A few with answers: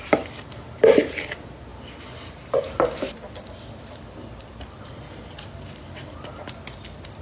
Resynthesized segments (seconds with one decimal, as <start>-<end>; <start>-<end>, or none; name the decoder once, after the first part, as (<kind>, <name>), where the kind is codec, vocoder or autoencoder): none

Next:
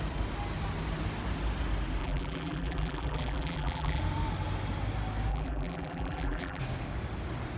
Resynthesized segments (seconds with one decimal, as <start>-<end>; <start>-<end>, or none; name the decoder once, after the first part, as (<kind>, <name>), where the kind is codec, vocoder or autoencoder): 2.0-4.0 (vocoder, BigVGAN v2); 5.3-6.6

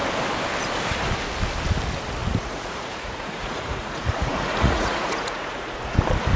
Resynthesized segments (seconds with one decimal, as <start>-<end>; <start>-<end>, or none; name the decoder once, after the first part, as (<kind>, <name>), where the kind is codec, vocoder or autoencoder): 2.2-6.0 (vocoder, Vocos)

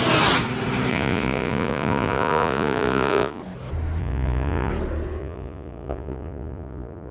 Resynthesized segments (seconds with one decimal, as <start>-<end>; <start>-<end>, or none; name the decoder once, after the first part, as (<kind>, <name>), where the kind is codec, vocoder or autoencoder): 0.9-3.4 (vocoder, Vocos); 4.0-4.7; 5.2-7.1

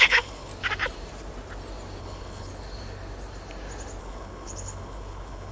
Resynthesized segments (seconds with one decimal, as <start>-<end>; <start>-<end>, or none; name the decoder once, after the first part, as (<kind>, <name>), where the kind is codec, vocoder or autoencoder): 0.0-0.5 (codec, HILCodec); 2.0-2.5; 4.0-5.5

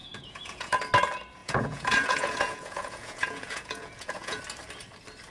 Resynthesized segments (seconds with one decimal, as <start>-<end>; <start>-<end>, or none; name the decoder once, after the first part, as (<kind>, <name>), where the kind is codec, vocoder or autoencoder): 0.0-0.8 (vocoder, Vocos); 1.4-4.4